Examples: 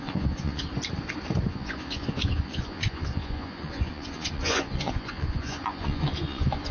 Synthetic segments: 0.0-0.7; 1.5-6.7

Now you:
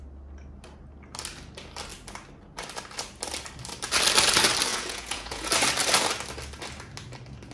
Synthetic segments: 4.7-5.5

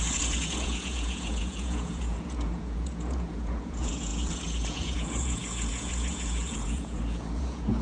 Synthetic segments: 0.0-7.8

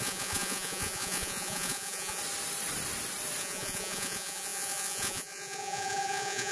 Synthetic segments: 0.0-2.2; 3.4-6.5

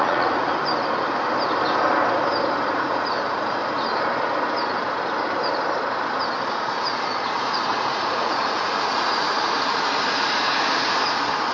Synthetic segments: 0.0-0.5; 2.7-3.6; 6.5-11.5

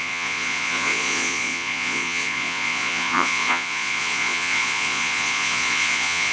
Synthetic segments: 0.0-6.3

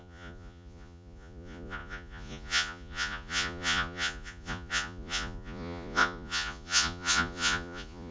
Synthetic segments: 0.0-8.1